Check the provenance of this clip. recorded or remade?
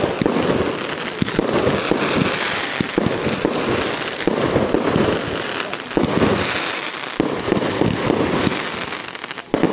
recorded